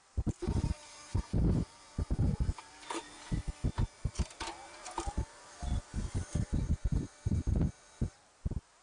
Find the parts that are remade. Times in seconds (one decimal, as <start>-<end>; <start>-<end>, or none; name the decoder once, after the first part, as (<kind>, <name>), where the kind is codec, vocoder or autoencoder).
none